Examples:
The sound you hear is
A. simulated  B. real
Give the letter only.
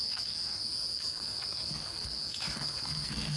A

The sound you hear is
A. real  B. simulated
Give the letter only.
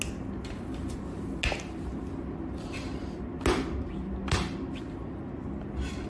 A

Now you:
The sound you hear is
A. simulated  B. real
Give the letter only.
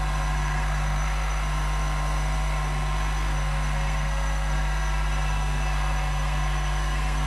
A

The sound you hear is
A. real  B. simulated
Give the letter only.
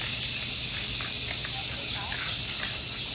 A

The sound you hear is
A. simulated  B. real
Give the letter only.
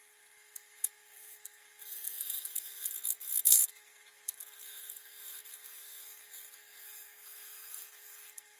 A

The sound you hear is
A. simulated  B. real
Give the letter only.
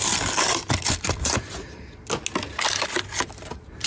B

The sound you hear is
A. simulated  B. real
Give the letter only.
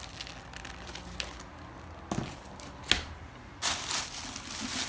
B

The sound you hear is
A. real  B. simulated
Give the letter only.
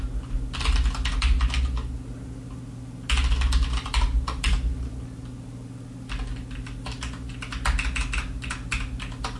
A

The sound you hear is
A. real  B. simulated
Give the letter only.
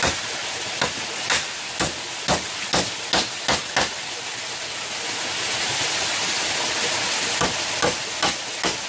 A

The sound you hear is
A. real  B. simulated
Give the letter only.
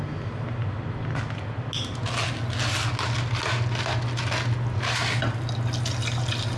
A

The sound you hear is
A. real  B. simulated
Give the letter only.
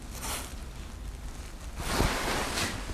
A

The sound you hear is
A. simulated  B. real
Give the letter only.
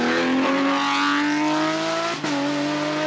B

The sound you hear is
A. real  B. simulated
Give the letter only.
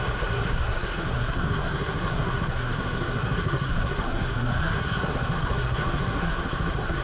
B